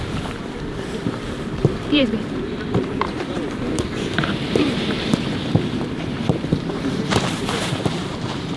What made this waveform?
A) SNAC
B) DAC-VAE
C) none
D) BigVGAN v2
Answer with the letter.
D